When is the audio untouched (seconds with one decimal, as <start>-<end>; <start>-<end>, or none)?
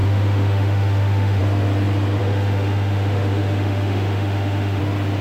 1.4-2.2; 4.8-5.2